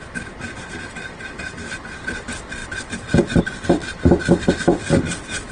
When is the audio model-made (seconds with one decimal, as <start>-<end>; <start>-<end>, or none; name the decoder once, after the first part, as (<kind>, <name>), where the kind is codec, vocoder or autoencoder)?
none